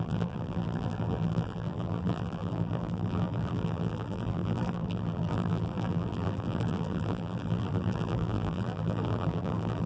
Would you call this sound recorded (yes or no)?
no